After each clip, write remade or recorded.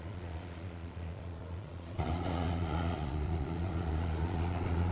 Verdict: remade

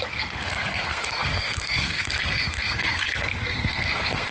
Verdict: remade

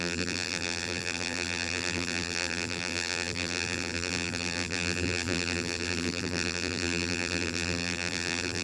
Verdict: remade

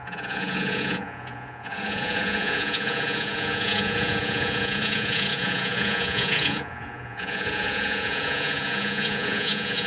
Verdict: remade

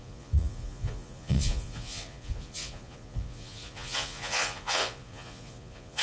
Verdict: remade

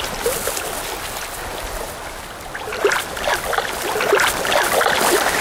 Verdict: recorded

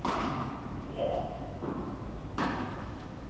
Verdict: remade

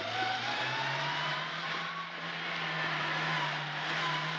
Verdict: recorded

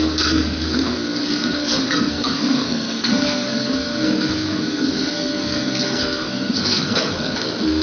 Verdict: remade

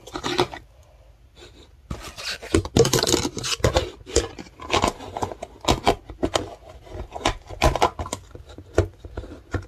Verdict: recorded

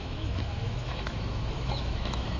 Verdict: remade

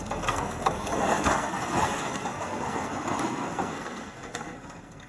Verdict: remade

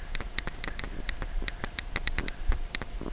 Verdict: remade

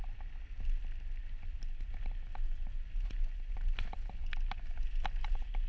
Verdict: recorded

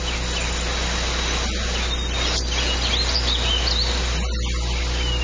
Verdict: recorded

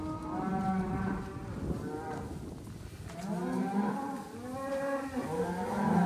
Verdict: recorded